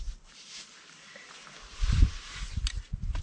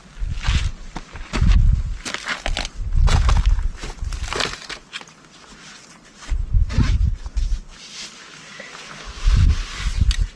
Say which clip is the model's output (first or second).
first